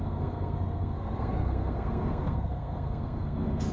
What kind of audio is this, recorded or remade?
remade